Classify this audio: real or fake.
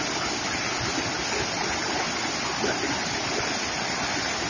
real